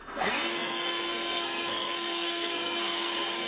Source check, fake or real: fake